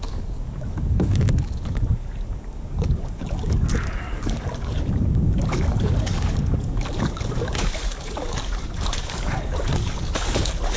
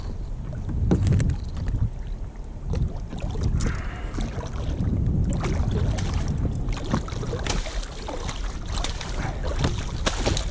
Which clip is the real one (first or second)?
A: second